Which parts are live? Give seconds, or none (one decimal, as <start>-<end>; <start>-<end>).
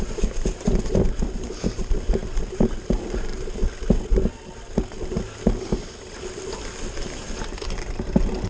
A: 0.0-8.5